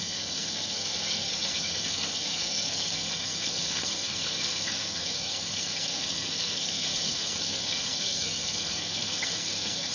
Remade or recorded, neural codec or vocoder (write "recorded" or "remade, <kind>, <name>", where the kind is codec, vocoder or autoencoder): remade, codec, SNAC